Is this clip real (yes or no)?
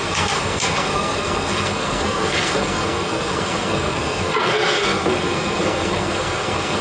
no